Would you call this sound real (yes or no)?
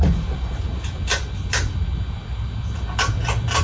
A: yes